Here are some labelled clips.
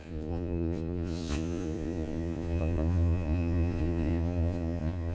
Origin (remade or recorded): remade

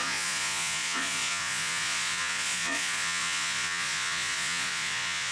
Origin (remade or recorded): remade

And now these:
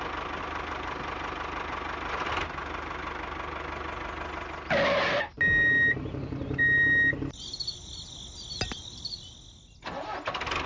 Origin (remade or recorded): recorded